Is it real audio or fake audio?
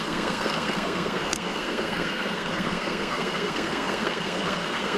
fake